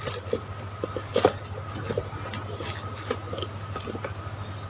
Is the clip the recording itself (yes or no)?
yes